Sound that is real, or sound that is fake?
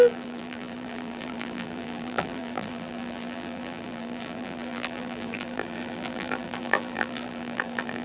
fake